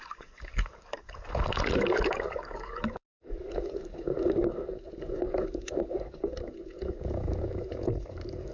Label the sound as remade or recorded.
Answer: remade